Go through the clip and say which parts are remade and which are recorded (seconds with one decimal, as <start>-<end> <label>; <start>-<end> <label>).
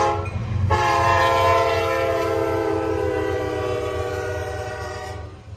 0.0-0.4 recorded; 0.4-1.2 remade; 1.2-2.6 recorded; 2.6-5.6 remade